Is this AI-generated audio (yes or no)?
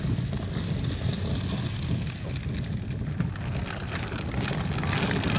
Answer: no